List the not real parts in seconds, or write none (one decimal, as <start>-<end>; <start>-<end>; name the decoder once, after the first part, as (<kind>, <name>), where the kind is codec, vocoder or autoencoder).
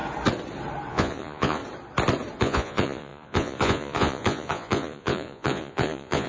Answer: 0.9-1.6 (vocoder, Vocos); 2.4-6.3